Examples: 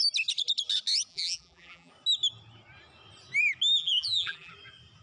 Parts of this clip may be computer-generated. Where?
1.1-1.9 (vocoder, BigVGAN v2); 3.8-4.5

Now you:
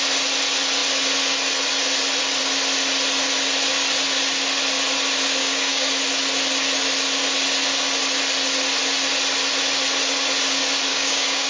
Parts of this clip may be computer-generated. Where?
5.4-5.9 (codec, DAC); 10.9-11.5

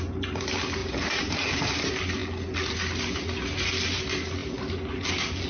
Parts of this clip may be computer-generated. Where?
0.8-1.8 (vocoder, BigVGAN v2)